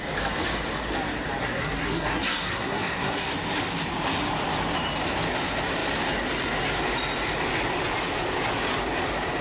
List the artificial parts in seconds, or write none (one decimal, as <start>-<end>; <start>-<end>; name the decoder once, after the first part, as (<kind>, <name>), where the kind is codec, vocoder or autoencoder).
1.4-3.3 (codec, SNAC)